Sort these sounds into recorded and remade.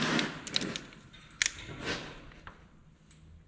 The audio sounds recorded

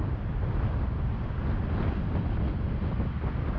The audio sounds recorded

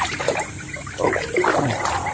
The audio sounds recorded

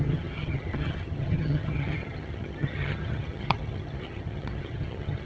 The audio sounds remade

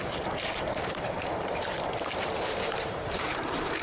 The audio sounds remade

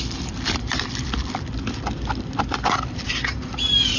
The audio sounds remade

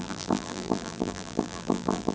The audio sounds remade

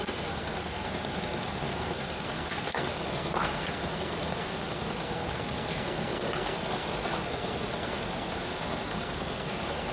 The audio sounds remade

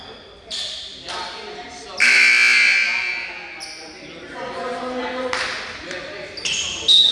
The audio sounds recorded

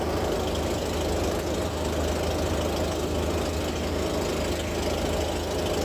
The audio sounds recorded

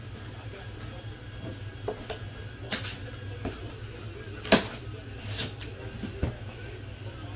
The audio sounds recorded